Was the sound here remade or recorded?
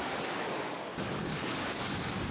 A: remade